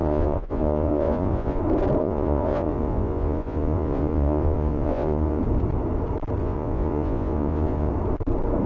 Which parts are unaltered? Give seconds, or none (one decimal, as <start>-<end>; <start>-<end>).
1.6-2.0; 5.4-6.4; 7.9-8.7